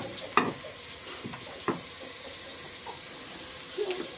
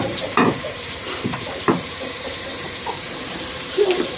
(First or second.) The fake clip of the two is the second